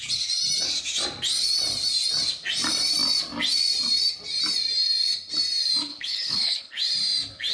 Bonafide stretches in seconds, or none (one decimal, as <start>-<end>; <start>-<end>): 0.0-5.9; 6.8-7.5